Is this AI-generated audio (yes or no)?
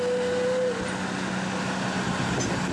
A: no